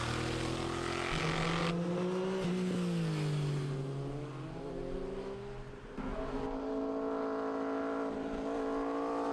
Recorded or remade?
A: recorded